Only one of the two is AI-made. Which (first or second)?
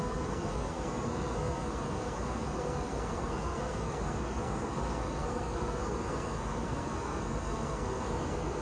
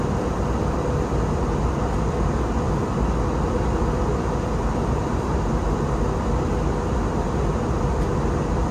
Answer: first